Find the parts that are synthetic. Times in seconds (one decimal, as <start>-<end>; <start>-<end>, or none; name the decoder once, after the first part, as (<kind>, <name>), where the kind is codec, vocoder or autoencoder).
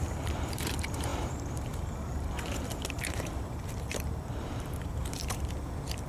0.0-6.1 (vocoder, BigVGAN v2)